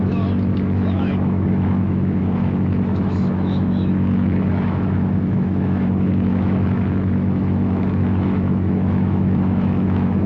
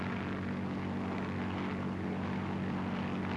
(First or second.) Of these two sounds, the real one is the second